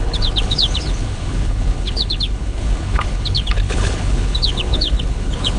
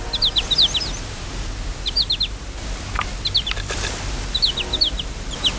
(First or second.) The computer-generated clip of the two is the first